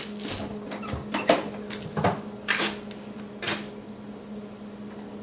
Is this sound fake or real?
real